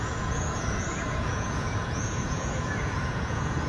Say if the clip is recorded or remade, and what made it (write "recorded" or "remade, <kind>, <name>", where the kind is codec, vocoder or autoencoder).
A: remade, vocoder, Vocos